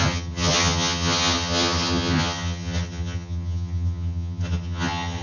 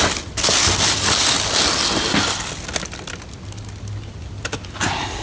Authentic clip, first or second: second